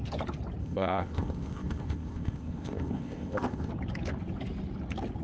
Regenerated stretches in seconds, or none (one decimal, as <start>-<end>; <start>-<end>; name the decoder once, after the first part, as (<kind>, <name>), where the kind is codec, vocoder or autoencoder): 0.6-3.7 (codec, ZipCodec)